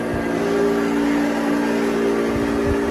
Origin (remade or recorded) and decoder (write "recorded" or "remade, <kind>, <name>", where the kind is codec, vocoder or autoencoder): recorded